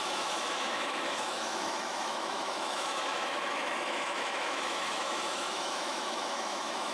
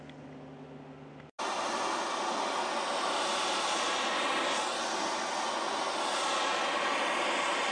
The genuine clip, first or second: second